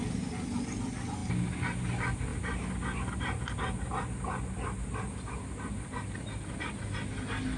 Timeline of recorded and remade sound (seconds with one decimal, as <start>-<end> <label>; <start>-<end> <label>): 0.0-7.6 recorded